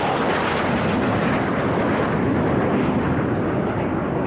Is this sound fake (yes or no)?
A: no